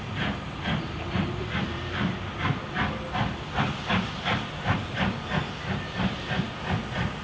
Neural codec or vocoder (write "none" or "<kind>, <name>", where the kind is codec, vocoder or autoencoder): none